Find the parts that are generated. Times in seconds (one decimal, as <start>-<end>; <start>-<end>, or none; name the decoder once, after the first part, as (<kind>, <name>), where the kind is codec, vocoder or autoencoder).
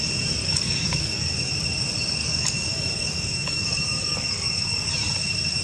0.4-1.5 (codec, DAC); 2.2-4.9